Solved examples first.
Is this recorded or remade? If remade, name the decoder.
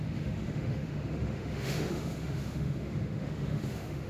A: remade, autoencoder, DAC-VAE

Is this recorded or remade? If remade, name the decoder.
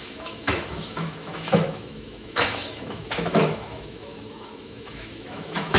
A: remade, autoencoder, DAC-VAE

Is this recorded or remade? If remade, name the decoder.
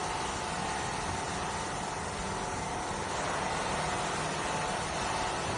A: recorded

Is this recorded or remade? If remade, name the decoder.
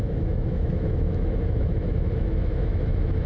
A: remade, autoencoder, DAC-VAE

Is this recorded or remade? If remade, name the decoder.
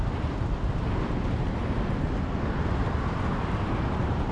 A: recorded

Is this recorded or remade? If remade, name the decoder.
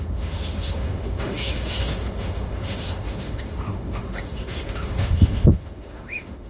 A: remade, autoencoder, DAC-VAE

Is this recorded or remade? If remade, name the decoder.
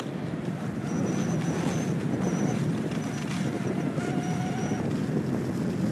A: recorded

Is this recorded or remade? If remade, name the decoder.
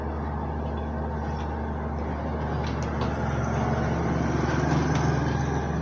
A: recorded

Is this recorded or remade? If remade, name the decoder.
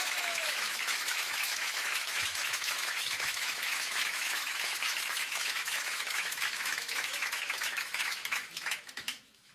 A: remade, autoencoder, DAC-VAE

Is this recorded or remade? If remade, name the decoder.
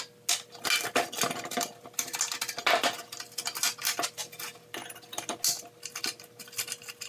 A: recorded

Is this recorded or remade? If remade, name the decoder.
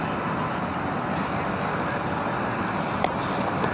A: recorded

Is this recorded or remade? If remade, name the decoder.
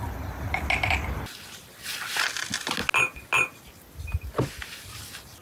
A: recorded